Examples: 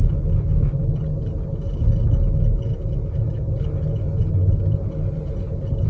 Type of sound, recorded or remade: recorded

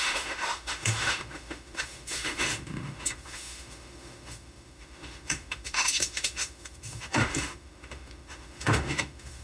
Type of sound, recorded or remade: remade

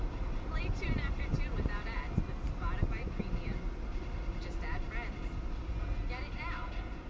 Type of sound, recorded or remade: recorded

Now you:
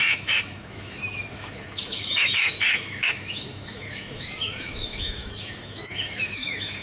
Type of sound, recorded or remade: remade